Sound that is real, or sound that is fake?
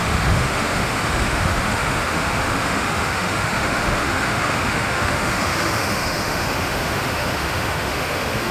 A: fake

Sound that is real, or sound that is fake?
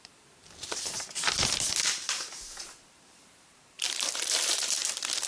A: fake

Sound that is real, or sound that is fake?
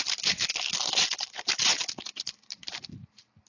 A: real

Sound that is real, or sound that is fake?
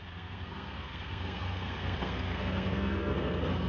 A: fake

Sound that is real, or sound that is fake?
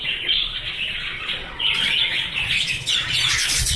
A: fake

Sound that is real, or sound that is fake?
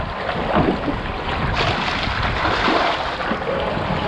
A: real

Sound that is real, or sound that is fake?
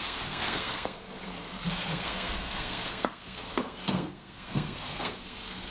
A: fake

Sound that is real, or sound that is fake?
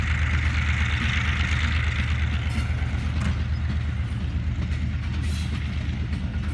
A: real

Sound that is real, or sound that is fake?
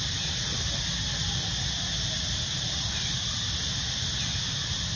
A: real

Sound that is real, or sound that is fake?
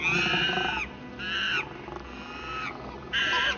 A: real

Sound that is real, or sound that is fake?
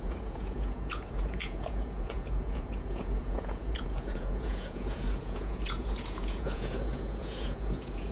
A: fake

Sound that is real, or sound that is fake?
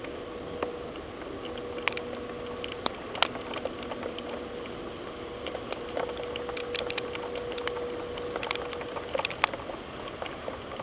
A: real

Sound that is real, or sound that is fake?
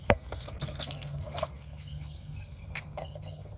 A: fake